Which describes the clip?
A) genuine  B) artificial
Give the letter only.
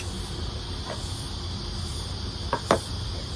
A